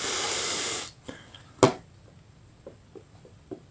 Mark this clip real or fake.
real